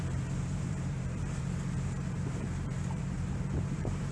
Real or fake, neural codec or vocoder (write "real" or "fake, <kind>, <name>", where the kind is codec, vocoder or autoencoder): fake, vocoder, BigVGAN v2